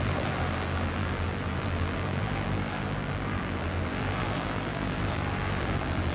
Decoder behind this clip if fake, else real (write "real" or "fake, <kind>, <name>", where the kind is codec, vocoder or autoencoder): fake, vocoder, BigVGAN v2